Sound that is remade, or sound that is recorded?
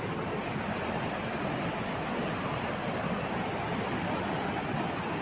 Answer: recorded